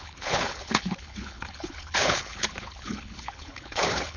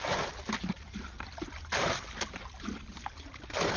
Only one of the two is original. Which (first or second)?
second